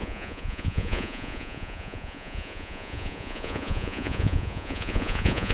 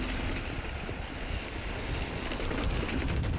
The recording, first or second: second